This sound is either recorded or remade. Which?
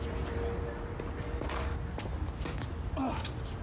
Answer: recorded